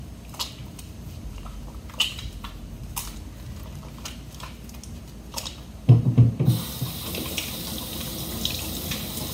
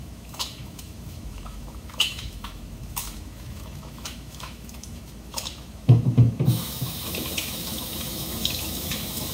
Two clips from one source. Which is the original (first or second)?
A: first